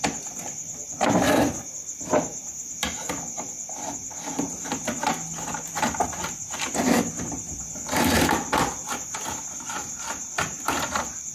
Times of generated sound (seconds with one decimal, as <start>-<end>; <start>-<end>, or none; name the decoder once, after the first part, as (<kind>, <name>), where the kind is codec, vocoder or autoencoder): none